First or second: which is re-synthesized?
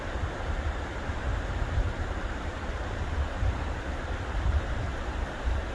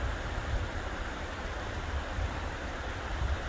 first